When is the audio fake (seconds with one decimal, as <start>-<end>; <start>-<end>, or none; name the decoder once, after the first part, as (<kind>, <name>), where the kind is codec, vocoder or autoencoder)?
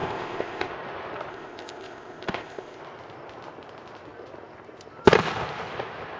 0.0-0.7 (codec, ZipCodec); 1.3-2.8